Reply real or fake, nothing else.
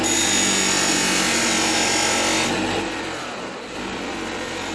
real